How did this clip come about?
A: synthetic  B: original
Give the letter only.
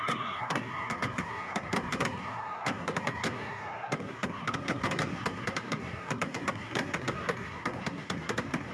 A